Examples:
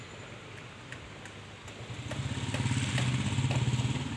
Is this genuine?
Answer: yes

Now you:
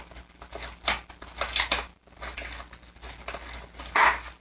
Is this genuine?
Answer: yes